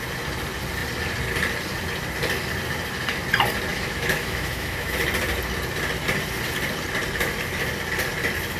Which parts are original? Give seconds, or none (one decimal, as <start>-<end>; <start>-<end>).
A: 0.0-3.7; 5.0-8.6